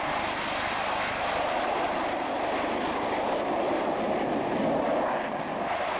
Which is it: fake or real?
real